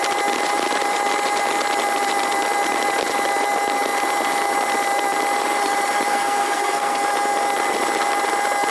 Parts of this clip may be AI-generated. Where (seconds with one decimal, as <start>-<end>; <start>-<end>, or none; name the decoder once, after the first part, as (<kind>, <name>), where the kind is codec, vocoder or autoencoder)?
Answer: 6.1-7.0 (codec, SNAC)